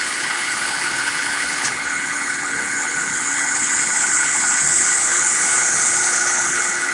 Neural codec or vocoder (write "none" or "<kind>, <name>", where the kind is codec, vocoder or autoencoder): codec, HILCodec